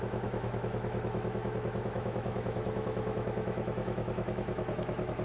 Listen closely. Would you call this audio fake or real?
fake